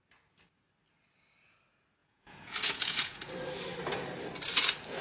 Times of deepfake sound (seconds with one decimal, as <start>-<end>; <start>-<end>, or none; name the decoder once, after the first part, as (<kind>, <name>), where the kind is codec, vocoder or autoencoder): 2.0-3.3 (vocoder, Vocos)